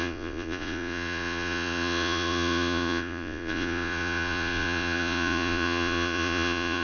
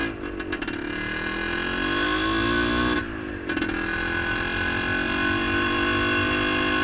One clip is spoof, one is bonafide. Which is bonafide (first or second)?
second